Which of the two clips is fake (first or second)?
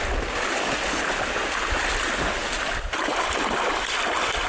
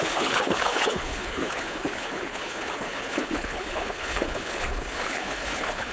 second